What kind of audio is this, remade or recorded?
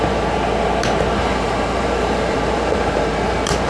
remade